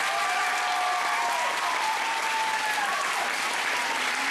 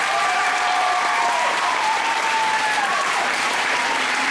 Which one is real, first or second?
first